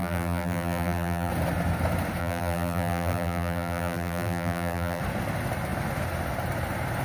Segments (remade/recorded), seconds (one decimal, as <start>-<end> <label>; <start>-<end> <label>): 0.0-1.3 remade; 1.3-2.2 recorded; 2.2-5.0 remade; 5.0-7.0 recorded

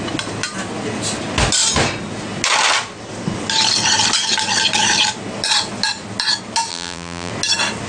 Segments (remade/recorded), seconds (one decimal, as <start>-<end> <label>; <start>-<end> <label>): 0.0-6.7 recorded; 6.7-7.3 remade; 7.3-7.9 recorded

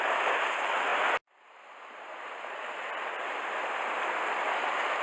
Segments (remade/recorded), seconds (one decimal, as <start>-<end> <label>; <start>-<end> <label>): 0.0-5.0 recorded

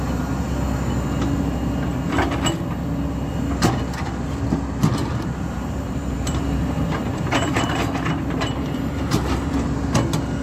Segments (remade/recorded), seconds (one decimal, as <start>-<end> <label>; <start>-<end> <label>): 0.0-5.0 recorded; 5.0-9.5 remade; 9.5-10.4 recorded

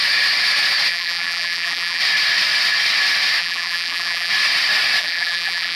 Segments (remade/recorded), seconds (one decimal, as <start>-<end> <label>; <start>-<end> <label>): 0.0-0.9 recorded; 0.9-2.0 remade; 2.0-3.4 recorded; 3.4-4.3 remade; 4.3-5.0 recorded; 5.0-5.8 remade

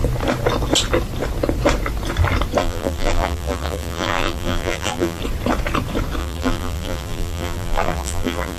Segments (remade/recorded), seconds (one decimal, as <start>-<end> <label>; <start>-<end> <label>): 0.0-2.6 recorded; 2.6-5.2 remade; 5.2-6.2 recorded; 6.2-8.6 remade

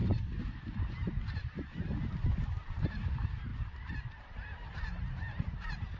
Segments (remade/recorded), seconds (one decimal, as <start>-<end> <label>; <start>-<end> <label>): 0.0-3.5 remade; 3.5-4.2 recorded; 4.2-6.0 remade